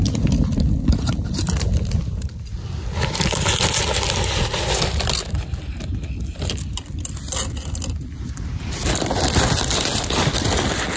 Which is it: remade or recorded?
recorded